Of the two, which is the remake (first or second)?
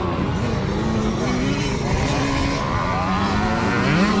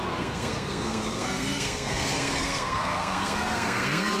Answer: second